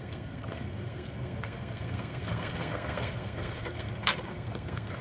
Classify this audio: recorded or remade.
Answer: remade